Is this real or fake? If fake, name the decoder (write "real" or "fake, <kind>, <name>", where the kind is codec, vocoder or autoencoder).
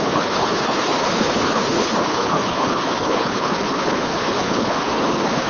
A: fake, codec, HILCodec